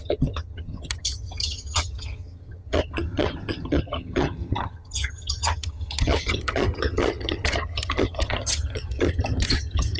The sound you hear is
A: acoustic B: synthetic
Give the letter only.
B